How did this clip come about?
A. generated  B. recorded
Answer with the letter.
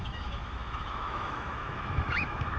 A